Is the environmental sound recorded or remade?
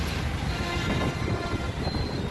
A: recorded